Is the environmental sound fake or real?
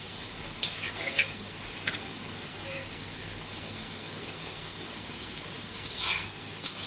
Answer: fake